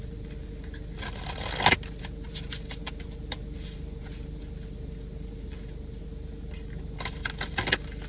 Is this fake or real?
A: real